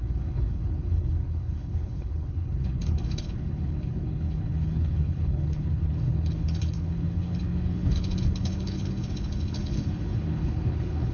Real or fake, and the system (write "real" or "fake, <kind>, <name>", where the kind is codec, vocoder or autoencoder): fake, codec, HILCodec